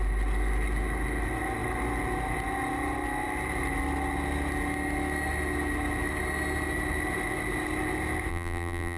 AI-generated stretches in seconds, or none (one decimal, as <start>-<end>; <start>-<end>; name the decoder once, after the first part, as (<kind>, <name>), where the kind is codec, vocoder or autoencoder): 8.3-9.0 (vocoder, BigVGAN v2)